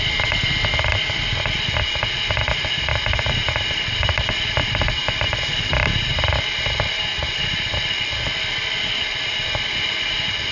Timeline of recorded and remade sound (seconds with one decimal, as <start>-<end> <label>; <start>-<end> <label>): 0.0-10.5 recorded